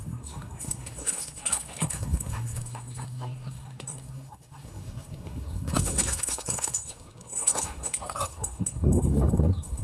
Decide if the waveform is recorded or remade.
remade